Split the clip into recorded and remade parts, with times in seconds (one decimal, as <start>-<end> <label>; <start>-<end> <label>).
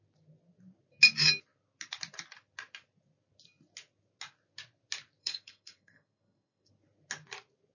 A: 0.0-5.2 recorded; 5.2-6.7 remade; 6.7-7.7 recorded